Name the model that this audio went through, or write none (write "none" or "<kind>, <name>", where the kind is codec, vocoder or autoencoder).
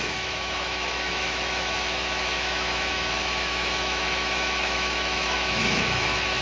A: autoencoder, DAC-VAE